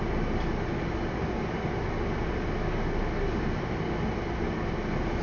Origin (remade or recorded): recorded